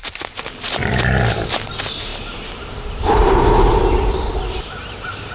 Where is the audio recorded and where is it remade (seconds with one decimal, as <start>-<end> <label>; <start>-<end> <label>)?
0.0-0.5 remade; 0.5-2.1 recorded; 2.1-5.3 remade